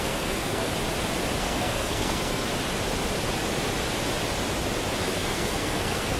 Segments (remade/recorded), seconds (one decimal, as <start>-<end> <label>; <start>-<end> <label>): 0.0-0.7 remade; 0.7-1.4 recorded; 1.4-2.5 remade; 2.5-5.0 recorded; 5.0-6.2 remade